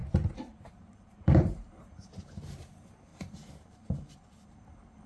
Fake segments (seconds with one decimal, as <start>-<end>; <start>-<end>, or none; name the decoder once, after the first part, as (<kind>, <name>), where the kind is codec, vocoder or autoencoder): 0.0-5.1 (vocoder, BigVGAN v2)